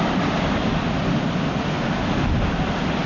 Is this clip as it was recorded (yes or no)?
yes